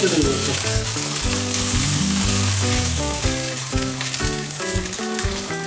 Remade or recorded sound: remade